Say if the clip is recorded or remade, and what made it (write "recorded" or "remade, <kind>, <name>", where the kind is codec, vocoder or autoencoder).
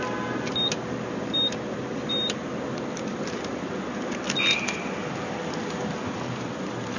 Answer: recorded